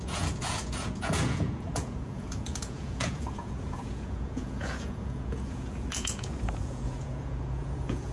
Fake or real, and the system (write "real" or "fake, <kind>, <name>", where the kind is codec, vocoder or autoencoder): fake, vocoder, Vocos